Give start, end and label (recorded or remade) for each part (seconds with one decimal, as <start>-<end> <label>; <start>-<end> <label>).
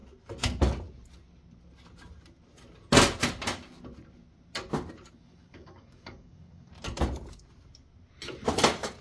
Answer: 0.0-5.1 recorded; 5.1-6.7 remade; 6.7-9.0 recorded